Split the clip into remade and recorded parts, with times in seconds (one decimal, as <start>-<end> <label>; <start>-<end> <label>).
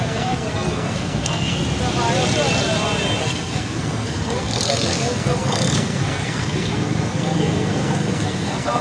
0.0-1.6 remade; 1.6-3.2 recorded; 3.2-8.8 remade